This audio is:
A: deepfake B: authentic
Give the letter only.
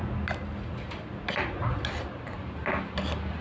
B